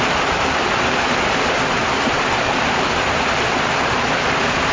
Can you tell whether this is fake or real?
real